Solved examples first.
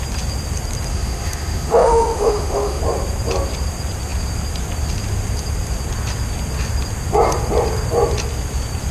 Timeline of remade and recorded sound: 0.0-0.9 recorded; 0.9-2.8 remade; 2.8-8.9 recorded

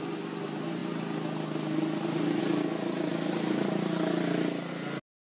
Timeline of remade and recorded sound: 0.0-5.4 recorded